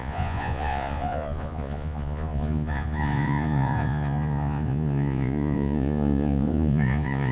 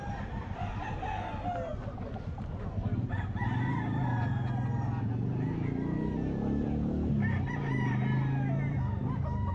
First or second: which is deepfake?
first